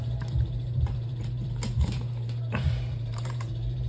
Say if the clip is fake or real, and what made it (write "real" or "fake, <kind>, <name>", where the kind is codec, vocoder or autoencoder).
fake, vocoder, BigVGAN v2